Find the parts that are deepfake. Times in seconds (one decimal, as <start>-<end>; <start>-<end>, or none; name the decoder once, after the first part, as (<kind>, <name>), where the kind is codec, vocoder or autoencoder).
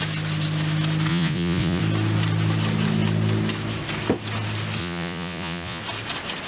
1.1-1.8 (vocoder, Vocos); 4.8-5.8